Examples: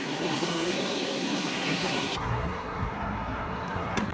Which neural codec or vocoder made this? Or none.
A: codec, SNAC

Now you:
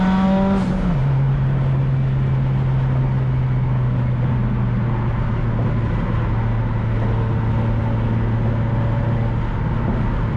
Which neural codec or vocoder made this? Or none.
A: none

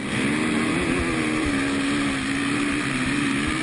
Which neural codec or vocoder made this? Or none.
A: none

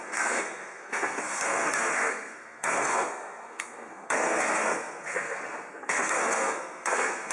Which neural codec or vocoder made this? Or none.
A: codec, SNAC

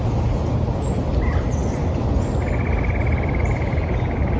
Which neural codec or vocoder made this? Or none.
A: none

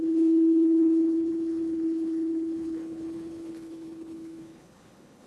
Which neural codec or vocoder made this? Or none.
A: codec, HILCodec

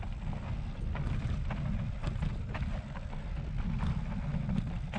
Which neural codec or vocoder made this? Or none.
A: none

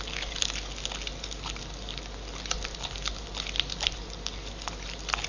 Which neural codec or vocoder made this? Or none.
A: none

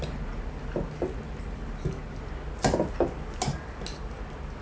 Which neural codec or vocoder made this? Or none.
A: none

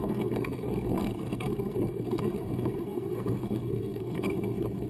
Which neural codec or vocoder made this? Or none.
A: codec, SNAC